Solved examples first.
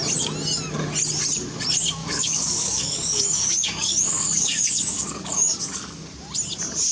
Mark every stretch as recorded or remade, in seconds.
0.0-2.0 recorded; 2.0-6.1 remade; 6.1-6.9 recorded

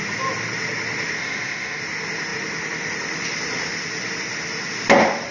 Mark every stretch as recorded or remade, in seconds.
0.0-1.2 recorded; 1.2-1.8 remade; 1.8-5.3 recorded